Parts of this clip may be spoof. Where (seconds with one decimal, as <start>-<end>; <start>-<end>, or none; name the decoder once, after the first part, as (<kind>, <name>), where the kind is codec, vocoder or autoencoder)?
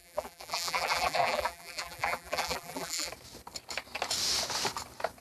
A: 0.0-3.1 (vocoder, BigVGAN v2)